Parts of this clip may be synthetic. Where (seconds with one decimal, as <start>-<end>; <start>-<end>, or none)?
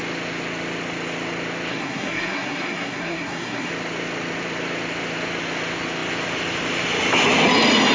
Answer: 1.7-3.7